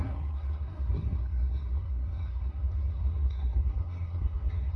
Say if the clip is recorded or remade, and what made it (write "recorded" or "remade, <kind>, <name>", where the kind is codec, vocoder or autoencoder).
remade, codec, SNAC